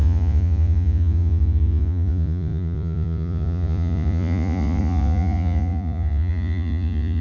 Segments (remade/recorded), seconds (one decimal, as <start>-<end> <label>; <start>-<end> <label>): 0.0-7.2 remade